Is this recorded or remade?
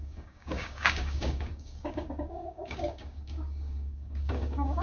remade